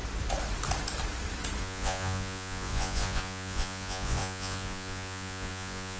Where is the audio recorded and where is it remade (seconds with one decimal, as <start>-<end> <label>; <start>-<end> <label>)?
0.0-1.6 recorded; 1.6-6.0 remade